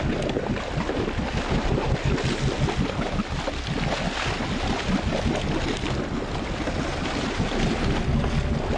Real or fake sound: real